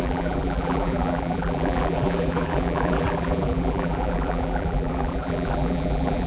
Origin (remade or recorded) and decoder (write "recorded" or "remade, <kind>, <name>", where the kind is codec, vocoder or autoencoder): remade, vocoder, BigVGAN v2